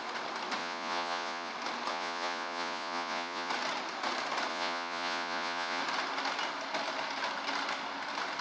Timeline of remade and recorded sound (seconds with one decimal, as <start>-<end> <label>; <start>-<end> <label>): 0.0-0.6 recorded; 0.6-1.5 remade; 1.5-1.9 recorded; 1.9-3.5 remade; 3.5-4.5 recorded; 4.5-5.8 remade; 5.8-8.4 recorded